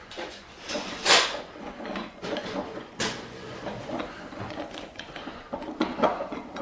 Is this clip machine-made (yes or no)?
yes